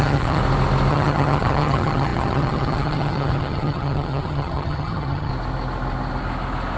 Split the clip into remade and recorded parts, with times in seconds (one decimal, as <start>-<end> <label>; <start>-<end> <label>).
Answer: 0.0-0.4 remade; 0.4-0.9 recorded; 0.9-5.3 remade; 5.3-6.8 recorded